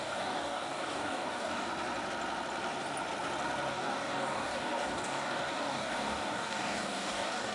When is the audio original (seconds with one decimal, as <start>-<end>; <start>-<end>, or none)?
1.7-3.7